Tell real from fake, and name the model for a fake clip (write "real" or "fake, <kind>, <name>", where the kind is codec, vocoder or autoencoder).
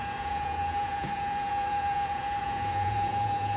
fake, vocoder, Vocos